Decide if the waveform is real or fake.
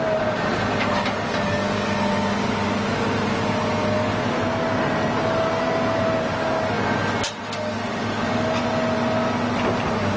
real